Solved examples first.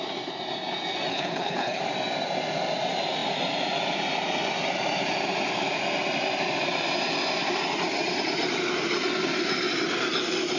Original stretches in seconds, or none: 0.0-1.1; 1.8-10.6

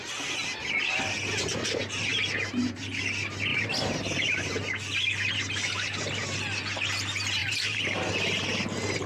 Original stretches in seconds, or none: 0.0-3.5; 4.6-7.4; 8.1-9.1

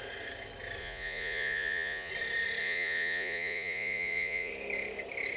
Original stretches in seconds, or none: 0.0-0.8; 2.1-2.6; 4.5-5.4

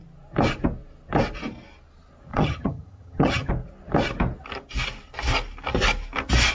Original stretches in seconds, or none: 0.0-2.3; 3.5-6.5

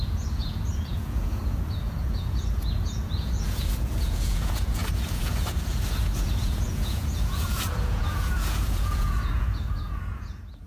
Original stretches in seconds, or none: none

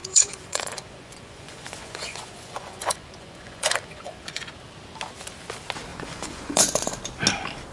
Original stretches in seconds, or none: 4.5-5.9; 7.0-7.7

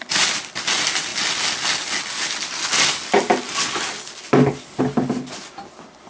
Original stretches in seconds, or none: 0.0-6.1

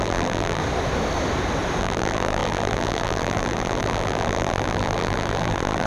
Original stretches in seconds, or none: 0.6-1.8